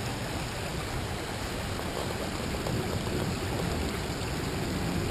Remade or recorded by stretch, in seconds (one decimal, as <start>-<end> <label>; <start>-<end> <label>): 0.0-5.1 recorded